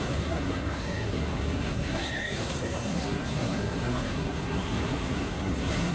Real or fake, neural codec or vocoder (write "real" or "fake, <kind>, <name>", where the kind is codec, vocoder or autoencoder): fake, codec, SNAC